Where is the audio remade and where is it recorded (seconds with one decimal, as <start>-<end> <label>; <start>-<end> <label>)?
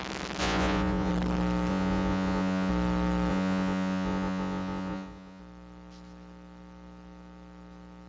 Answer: 0.0-0.4 recorded; 0.4-1.1 remade; 1.1-1.7 recorded; 1.7-2.7 remade; 2.7-3.3 recorded; 3.3-5.4 remade; 5.4-8.1 recorded